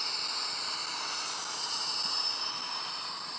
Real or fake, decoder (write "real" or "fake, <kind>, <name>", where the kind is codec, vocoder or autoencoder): real